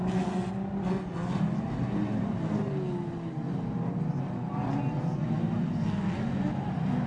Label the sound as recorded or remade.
recorded